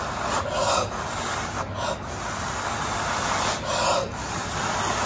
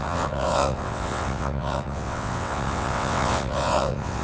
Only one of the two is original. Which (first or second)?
first